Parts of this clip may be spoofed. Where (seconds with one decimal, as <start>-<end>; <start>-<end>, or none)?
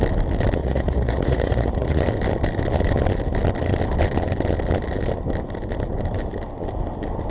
0.6-2.0